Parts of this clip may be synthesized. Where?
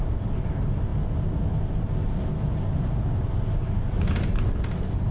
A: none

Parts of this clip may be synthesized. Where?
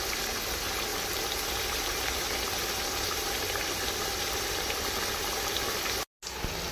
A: none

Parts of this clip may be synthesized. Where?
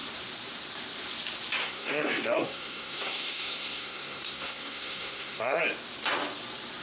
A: 1.6-5.6